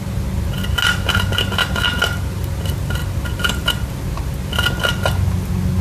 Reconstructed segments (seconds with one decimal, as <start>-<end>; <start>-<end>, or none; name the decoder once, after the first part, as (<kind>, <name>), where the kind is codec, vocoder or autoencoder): none